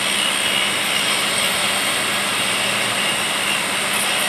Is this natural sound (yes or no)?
yes